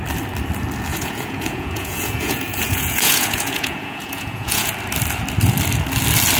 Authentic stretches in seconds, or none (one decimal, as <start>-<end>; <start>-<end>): 0.0-0.9; 4.7-6.4